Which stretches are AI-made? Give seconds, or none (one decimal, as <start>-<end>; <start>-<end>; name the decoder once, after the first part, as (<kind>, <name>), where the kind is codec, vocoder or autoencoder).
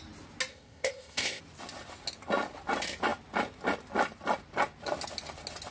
0.5-1.4 (codec, ZipCodec)